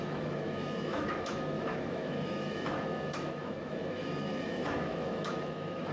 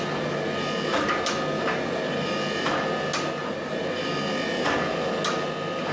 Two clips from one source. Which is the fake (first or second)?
first